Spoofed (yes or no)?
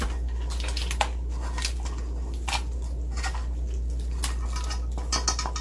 no